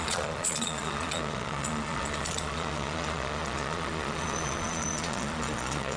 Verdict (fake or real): fake